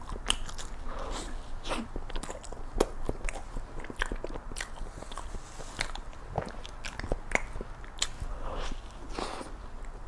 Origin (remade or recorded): recorded